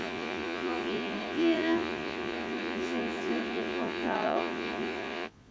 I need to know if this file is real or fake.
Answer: fake